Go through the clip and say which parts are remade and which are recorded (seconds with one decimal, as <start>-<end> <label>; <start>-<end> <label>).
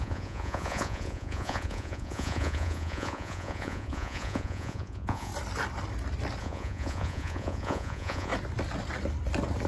0.0-5.3 remade; 5.3-6.4 recorded; 6.4-8.3 remade; 8.3-9.7 recorded